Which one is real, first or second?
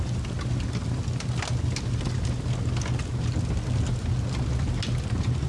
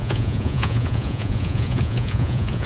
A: first